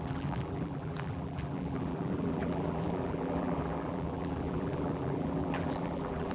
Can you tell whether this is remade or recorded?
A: remade